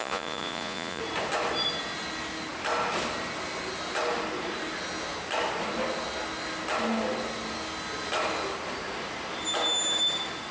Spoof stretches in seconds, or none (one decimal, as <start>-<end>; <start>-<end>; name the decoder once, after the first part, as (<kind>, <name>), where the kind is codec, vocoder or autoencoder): 0.0-1.0 (vocoder, Vocos)